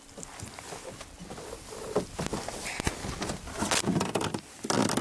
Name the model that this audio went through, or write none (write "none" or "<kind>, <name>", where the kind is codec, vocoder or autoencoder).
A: none